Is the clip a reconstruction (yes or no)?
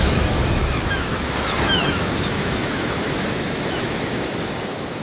yes